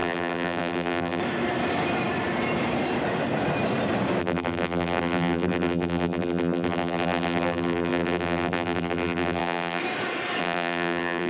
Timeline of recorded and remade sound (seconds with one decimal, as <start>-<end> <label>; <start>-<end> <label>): 0.0-1.2 remade; 1.2-4.2 recorded; 4.2-9.8 remade; 9.8-10.4 recorded; 10.4-11.3 remade